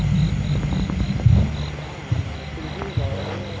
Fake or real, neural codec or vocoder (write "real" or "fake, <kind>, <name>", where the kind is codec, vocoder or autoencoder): real